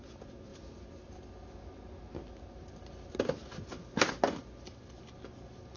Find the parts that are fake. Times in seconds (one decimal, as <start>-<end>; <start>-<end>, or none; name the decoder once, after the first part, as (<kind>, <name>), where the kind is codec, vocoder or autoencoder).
none